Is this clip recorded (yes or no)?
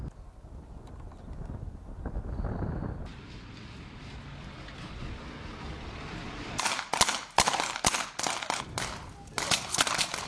yes